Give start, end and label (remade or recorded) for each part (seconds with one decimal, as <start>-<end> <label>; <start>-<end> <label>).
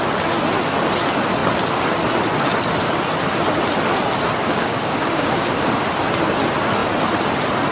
0.0-4.4 recorded; 4.4-5.8 remade; 5.8-7.7 recorded